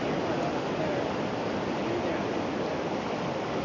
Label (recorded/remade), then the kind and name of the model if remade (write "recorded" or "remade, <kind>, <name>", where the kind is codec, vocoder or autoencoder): recorded